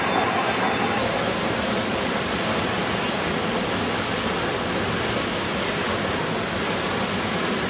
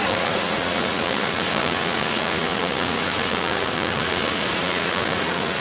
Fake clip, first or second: second